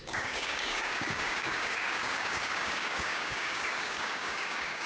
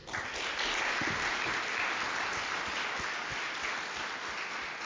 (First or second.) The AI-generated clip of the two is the first